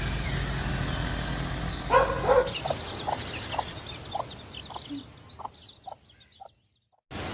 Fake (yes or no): no